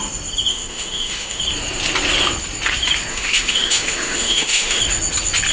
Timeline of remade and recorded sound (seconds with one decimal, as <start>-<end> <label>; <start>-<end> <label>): 0.0-0.5 recorded; 0.5-1.4 remade; 1.4-3.1 recorded; 3.1-4.8 remade; 4.8-5.5 recorded